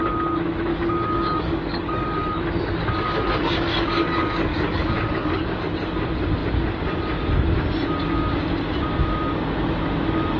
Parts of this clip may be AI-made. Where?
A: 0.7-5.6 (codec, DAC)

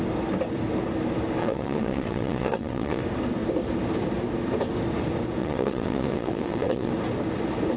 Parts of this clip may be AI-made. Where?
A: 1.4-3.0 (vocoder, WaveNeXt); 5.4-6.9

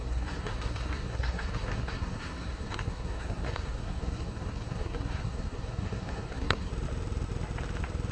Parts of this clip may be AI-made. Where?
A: 0.0-6.7 (codec, SNAC)

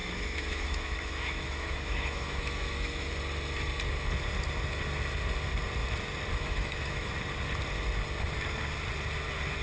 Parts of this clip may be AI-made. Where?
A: 0.0-3.1 (autoencoder, DAC-VAE); 6.3-7.1

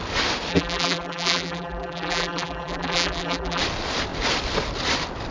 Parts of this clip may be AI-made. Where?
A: 0.5-3.6 (vocoder, BigVGAN v2)

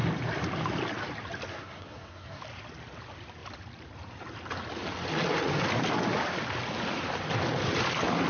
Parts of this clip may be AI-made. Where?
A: 1.5-2.4 (codec, SNAC)